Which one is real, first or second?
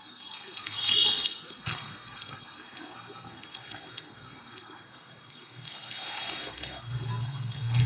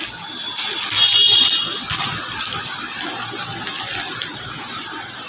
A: second